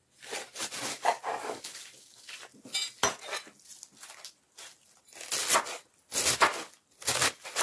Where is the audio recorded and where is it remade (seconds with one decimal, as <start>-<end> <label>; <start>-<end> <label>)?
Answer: 0.0-0.9 recorded; 0.9-2.3 remade; 2.3-7.6 recorded